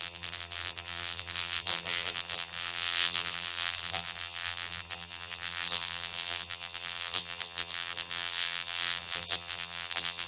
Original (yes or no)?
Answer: no